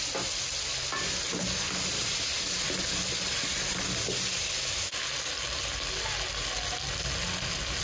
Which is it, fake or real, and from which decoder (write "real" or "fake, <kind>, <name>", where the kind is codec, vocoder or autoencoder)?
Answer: real